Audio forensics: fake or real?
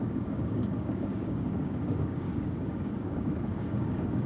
fake